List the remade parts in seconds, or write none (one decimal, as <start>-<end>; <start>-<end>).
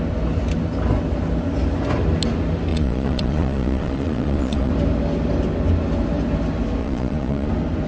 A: 2.7-4.7; 6.8-7.5